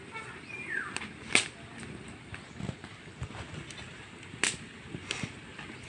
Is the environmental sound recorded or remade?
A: recorded